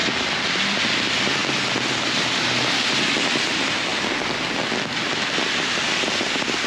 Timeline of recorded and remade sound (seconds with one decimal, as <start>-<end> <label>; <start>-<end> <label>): 0.0-6.7 recorded